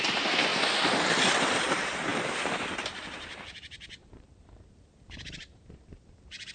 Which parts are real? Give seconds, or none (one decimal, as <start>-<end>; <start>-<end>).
0.5-1.5